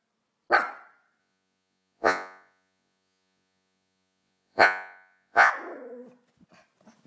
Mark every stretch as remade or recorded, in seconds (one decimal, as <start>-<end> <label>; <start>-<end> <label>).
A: 0.0-1.2 recorded; 1.2-5.5 remade; 5.5-7.1 recorded